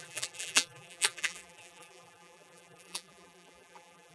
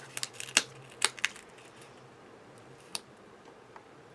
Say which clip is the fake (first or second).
first